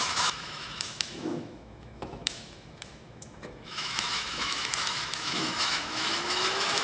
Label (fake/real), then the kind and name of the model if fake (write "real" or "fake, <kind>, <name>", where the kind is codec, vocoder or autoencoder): fake, autoencoder, DAC-VAE